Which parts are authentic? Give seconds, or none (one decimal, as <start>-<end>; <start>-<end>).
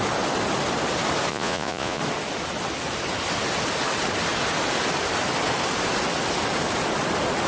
0.0-1.3; 2.0-7.5